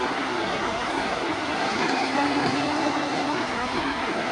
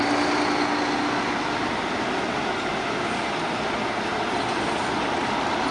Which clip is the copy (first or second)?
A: first